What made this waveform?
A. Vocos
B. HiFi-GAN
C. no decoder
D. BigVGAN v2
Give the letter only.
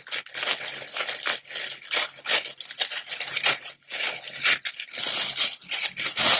C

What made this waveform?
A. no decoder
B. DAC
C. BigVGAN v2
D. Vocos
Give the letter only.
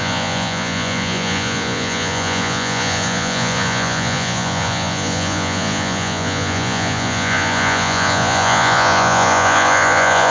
D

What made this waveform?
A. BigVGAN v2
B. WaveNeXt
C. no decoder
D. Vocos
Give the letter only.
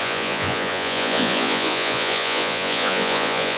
D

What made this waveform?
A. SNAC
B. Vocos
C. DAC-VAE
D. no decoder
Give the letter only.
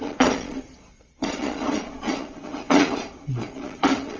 B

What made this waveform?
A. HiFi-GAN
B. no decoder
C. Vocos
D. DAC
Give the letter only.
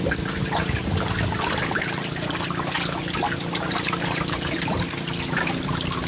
B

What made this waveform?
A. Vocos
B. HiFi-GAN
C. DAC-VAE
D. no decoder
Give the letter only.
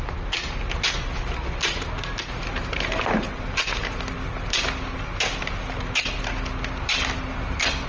D